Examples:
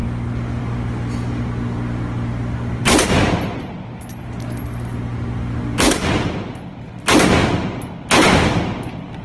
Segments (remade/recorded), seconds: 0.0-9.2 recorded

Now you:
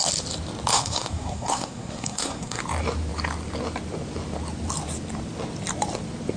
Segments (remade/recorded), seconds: 0.0-0.7 recorded; 0.7-2.6 remade; 2.6-6.4 recorded

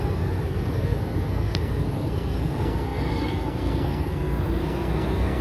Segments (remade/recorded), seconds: 0.0-5.4 remade

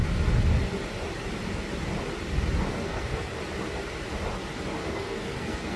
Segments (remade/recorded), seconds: 0.0-2.7 recorded; 2.7-3.3 remade; 3.3-4.8 recorded; 4.8-5.8 remade

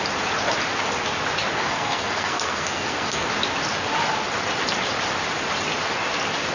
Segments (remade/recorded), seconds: 0.0-1.5 recorded; 1.5-3.3 remade; 3.3-6.5 recorded

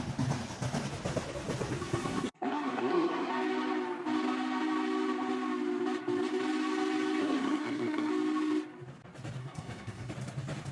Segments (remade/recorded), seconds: 0.0-1.8 recorded; 1.8-3.3 remade; 3.3-7.2 recorded; 7.2-8.1 remade; 8.1-9.4 recorded; 9.4-10.1 remade; 10.1-10.7 recorded